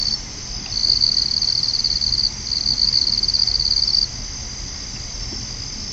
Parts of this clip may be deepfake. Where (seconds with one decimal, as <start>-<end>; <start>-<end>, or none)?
none